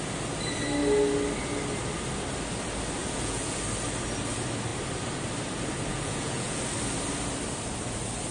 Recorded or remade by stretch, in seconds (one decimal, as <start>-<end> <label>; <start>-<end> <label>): 0.0-3.0 recorded; 3.0-3.6 remade; 3.6-5.9 recorded; 5.9-6.6 remade; 6.6-8.3 recorded